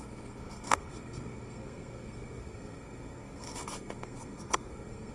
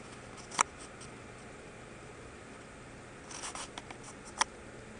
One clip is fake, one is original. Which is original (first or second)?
second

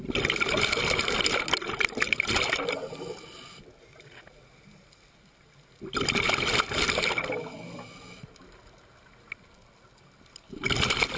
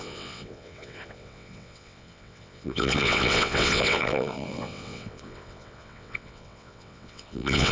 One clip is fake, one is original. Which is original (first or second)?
first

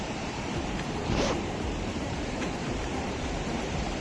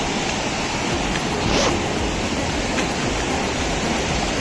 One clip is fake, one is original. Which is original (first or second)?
second